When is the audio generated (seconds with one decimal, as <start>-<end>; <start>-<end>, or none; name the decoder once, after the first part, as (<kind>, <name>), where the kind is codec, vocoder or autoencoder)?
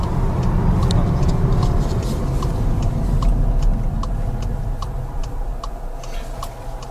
none